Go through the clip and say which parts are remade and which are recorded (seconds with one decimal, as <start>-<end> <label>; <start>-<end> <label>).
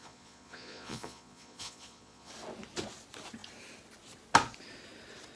0.0-2.3 remade; 2.3-5.4 recorded